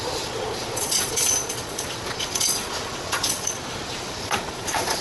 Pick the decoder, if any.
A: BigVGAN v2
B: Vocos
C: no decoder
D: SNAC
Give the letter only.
B